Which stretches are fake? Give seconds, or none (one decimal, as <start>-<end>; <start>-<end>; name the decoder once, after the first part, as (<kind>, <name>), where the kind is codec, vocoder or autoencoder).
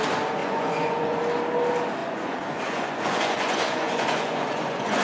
0.4-1.2 (vocoder, Vocos); 2.0-5.0